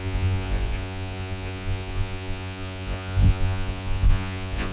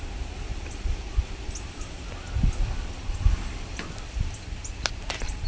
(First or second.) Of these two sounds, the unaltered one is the second